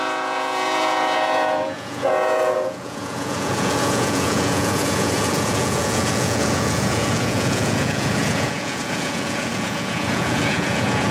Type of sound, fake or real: fake